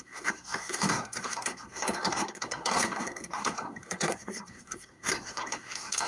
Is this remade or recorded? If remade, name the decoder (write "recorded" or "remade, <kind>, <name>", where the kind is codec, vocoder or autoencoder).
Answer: remade, codec, SNAC